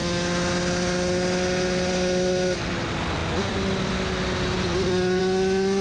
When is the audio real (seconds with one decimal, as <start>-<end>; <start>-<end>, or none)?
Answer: 0.0-5.8